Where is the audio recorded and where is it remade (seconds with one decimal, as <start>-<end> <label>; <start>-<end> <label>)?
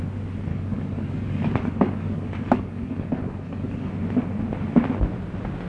0.0-0.5 recorded; 0.5-3.9 remade; 3.9-5.7 recorded